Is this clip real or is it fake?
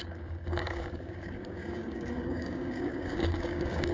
fake